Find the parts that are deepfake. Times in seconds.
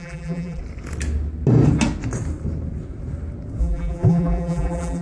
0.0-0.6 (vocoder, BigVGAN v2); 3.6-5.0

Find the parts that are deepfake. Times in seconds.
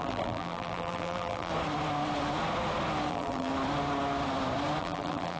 0.0-1.5 (vocoder, BigVGAN v2); 3.1-3.5; 4.8-5.4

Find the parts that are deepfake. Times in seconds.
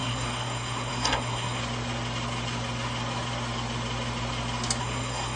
0.0-1.6 (codec, SNAC); 4.8-5.4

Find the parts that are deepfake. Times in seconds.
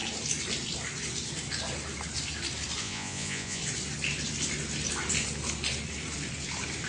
2.8-3.6 (vocoder, Vocos)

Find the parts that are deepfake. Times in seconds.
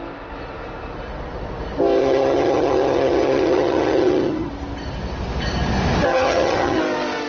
2.0-4.5 (vocoder, HiFi-GAN); 6.1-6.8